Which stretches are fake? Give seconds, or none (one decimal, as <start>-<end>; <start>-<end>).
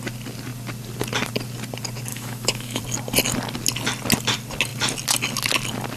2.1-2.8